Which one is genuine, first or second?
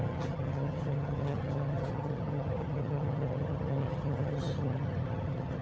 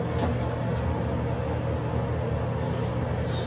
second